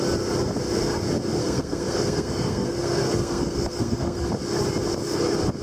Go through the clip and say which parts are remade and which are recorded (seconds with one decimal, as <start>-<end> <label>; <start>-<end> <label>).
0.0-1.4 recorded; 1.4-4.3 remade; 4.3-5.6 recorded